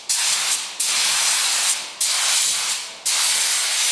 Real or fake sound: real